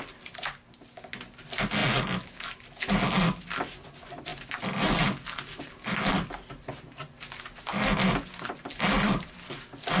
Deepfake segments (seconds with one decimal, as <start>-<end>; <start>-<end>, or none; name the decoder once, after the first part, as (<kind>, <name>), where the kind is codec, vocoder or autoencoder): none